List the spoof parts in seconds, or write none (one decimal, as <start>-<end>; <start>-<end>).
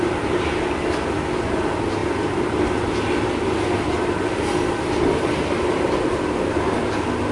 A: none